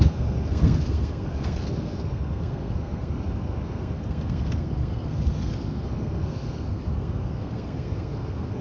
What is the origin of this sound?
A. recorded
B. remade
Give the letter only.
B